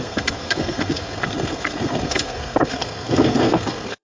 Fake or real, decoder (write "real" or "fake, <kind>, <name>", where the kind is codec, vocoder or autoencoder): fake, codec, SNAC